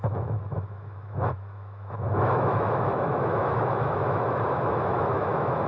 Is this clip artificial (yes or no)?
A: yes